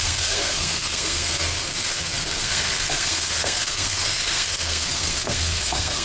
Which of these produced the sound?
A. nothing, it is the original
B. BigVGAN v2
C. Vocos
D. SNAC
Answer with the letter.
D